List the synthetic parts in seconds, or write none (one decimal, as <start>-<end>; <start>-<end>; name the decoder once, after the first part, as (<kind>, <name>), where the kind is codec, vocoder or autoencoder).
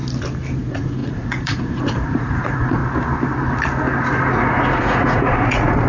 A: 0.6-2.8 (vocoder, Vocos); 4.3-5.9